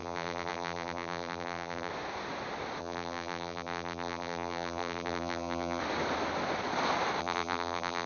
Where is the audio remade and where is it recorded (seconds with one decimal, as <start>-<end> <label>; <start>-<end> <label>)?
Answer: 0.0-1.9 remade; 1.9-2.8 recorded; 2.8-5.8 remade; 5.8-7.2 recorded; 7.2-8.1 remade

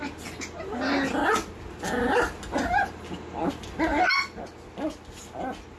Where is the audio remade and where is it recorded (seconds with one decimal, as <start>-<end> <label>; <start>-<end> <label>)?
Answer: 0.0-5.8 recorded

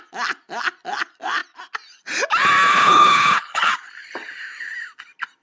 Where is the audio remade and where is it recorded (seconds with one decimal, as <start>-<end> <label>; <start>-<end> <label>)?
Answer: 0.0-2.7 recorded; 2.7-3.7 remade; 3.7-5.4 recorded

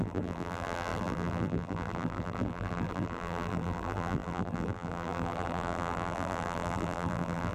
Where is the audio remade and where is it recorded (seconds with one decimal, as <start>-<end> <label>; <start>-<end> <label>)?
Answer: 0.0-7.5 remade

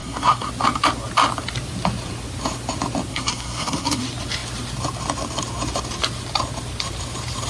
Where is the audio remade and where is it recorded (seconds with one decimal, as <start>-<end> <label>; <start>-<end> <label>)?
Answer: 0.0-0.5 remade; 0.5-3.1 recorded; 3.1-4.0 remade; 4.0-7.5 recorded

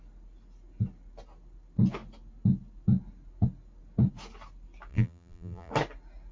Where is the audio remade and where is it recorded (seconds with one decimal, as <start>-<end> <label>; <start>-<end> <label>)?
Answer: 0.0-4.9 recorded; 4.9-5.7 remade; 5.7-6.3 recorded

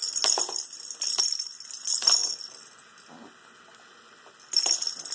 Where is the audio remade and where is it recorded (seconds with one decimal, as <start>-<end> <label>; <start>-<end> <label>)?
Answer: 0.0-5.1 recorded